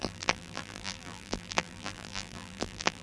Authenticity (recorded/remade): remade